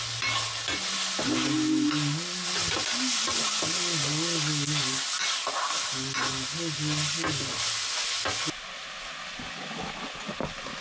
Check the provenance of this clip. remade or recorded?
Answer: recorded